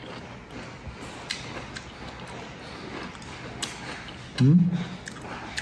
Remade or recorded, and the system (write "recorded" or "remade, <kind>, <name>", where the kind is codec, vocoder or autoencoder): recorded